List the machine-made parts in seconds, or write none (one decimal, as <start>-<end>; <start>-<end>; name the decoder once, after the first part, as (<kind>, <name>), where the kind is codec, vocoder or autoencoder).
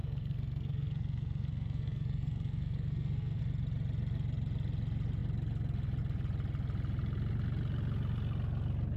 0.0-3.4 (codec, SNAC)